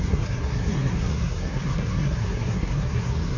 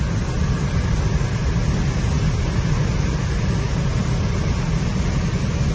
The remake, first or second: first